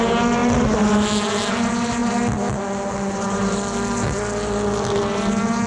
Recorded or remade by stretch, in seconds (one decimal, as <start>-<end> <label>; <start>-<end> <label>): 0.0-5.7 recorded